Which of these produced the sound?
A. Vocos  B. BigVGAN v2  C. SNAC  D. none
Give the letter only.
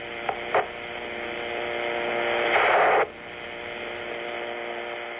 D